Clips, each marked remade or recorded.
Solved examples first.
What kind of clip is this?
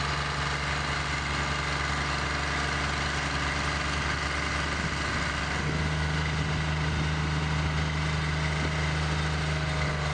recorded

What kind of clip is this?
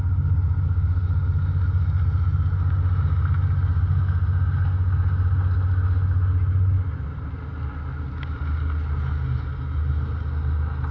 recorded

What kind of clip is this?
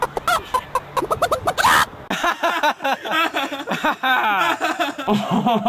recorded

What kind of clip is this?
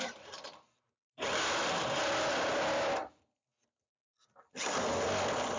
remade